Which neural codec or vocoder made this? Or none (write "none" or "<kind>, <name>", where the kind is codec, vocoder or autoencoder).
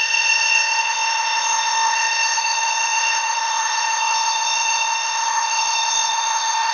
codec, ZipCodec